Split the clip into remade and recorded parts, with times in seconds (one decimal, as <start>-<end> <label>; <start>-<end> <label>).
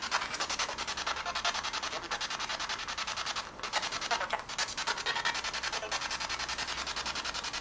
0.0-7.6 recorded